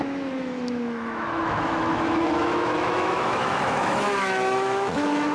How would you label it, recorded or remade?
remade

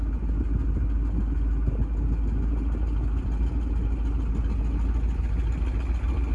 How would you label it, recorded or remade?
recorded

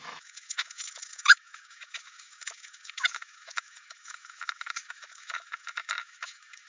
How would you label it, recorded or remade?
remade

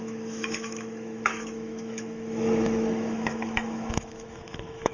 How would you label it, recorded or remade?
remade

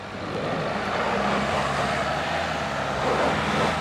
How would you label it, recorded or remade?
recorded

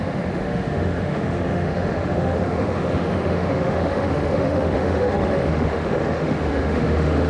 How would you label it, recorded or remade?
remade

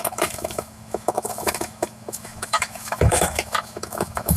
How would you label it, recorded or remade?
remade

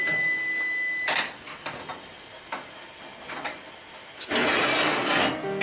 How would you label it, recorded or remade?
recorded